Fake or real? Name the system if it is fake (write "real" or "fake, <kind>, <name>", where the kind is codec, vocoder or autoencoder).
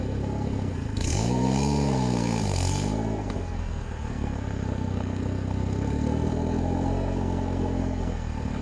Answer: fake, codec, SNAC